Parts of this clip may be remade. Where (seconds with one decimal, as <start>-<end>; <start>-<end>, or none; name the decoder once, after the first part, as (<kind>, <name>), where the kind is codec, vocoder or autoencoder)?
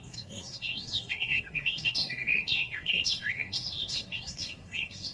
0.0-5.1 (codec, SNAC)